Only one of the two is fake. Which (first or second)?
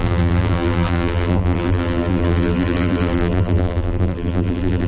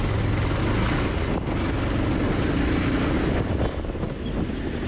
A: first